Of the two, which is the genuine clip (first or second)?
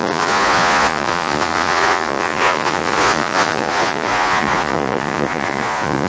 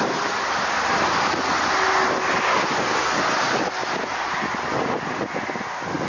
second